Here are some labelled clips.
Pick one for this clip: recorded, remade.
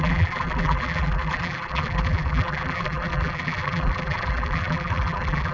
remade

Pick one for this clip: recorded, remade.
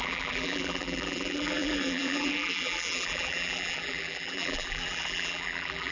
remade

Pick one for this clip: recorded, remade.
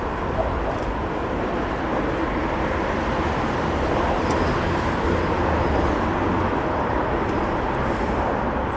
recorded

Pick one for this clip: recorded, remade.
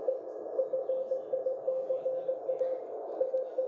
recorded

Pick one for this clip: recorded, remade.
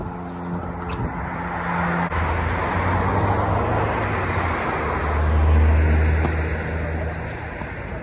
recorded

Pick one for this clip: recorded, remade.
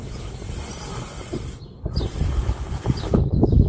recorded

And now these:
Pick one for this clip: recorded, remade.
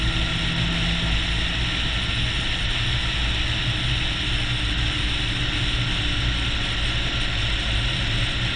recorded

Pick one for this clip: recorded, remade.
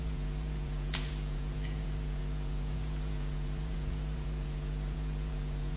remade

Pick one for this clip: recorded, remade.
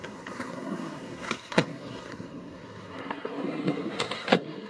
remade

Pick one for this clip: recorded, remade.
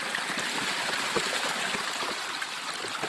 recorded